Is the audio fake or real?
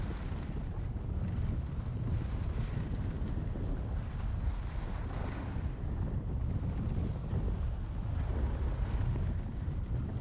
real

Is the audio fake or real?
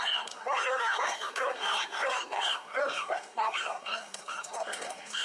fake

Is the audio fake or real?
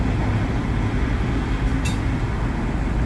real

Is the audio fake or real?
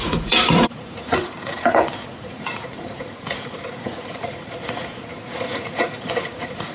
fake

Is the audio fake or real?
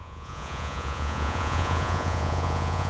fake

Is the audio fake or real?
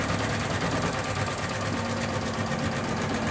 real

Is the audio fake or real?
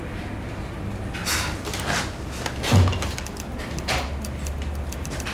real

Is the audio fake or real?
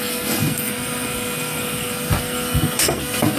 fake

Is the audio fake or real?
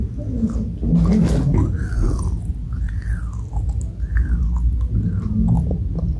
real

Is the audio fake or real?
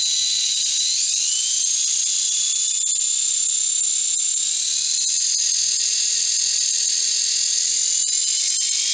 real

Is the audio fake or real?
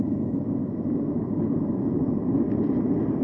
real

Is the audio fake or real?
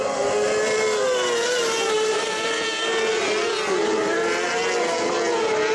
real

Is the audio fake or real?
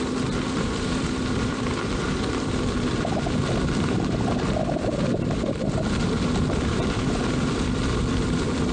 fake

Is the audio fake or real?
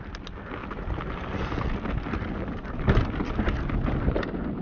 real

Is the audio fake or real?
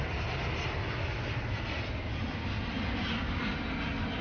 real